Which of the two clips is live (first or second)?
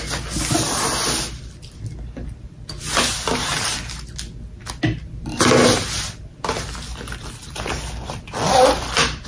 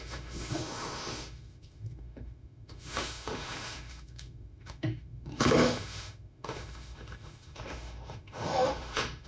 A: first